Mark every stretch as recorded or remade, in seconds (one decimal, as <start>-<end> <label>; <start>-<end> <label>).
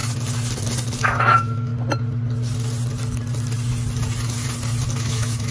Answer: 0.0-1.0 recorded; 1.0-1.7 remade; 1.7-5.0 recorded; 5.0-5.5 remade